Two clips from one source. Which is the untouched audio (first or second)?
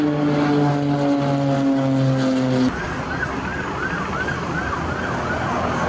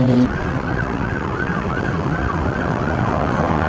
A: first